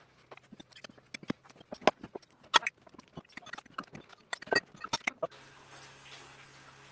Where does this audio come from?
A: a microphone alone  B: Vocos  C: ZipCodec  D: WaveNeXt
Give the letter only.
A